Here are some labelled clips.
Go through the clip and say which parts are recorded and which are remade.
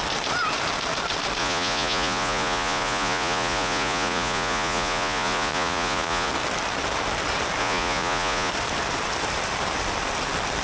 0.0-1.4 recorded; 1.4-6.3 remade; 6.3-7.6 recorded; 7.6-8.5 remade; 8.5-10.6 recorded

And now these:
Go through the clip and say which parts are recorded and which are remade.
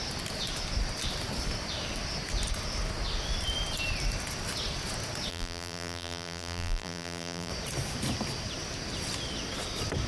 0.0-5.3 recorded; 5.3-7.5 remade; 7.5-10.1 recorded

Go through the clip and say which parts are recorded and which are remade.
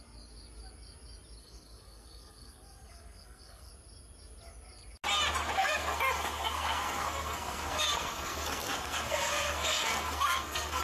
0.0-1.4 recorded; 1.4-3.7 remade; 3.7-5.6 recorded; 5.6-10.8 remade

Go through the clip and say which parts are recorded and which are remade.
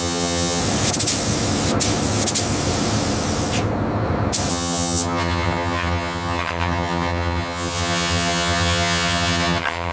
0.0-0.6 remade; 0.6-4.5 recorded; 4.5-9.9 remade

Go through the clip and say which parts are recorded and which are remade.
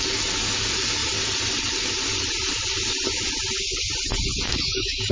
0.0-4.5 recorded; 4.5-5.1 remade